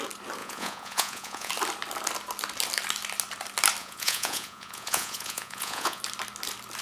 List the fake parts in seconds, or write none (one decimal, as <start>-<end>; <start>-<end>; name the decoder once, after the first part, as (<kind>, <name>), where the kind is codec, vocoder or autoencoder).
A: 0.4-1.5 (vocoder, Vocos); 3.8-6.0